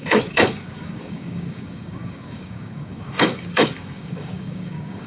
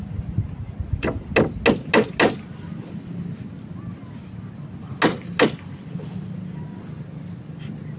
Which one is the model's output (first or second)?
first